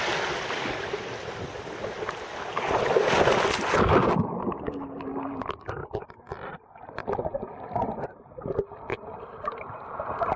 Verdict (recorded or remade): recorded